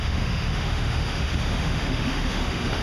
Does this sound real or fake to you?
fake